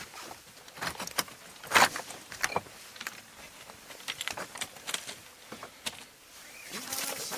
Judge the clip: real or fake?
fake